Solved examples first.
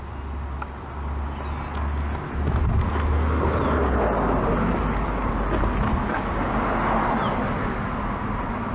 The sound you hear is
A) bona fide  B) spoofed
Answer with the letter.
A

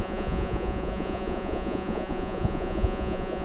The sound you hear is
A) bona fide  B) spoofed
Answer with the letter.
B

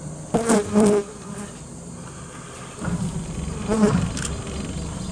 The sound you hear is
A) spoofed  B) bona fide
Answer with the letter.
B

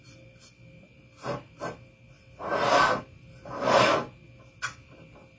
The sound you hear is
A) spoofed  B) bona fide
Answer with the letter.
B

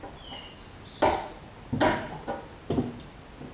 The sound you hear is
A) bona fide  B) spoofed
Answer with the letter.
A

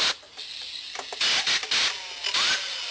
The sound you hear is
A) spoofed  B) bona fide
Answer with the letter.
B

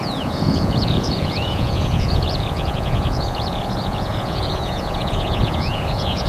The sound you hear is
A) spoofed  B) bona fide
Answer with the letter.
A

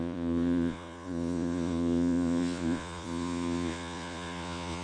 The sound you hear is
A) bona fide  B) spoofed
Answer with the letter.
B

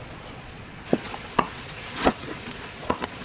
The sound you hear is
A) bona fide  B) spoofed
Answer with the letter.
B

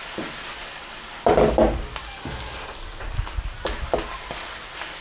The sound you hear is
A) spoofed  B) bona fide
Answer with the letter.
B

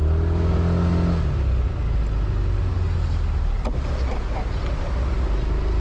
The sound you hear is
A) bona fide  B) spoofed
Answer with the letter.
A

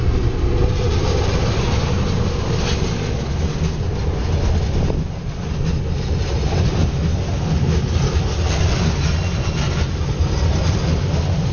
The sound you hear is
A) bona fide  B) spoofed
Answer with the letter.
A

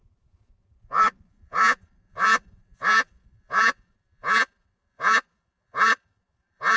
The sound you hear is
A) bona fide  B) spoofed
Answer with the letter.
B